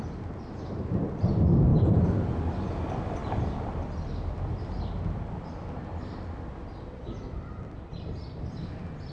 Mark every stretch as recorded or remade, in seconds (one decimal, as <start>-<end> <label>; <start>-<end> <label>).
0.0-9.1 recorded